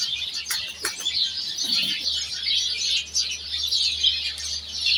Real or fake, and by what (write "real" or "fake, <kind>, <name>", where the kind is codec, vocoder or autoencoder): real